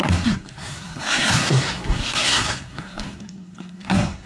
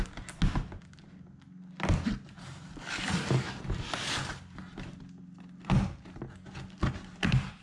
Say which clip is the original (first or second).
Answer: second